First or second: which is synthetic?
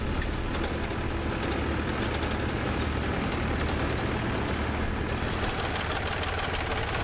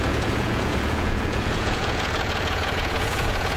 second